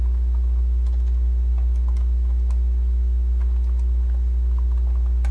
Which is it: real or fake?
real